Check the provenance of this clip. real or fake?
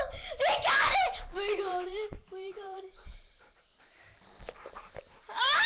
fake